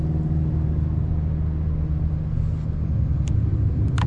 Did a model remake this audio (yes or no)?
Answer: no